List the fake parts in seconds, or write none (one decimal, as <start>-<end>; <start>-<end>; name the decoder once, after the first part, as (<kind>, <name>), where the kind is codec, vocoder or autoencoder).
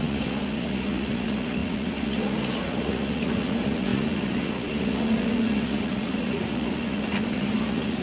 0.0-8.0 (vocoder, Vocos)